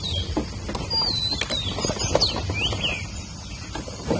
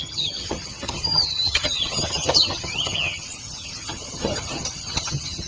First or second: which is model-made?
second